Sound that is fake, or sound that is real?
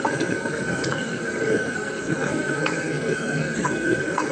fake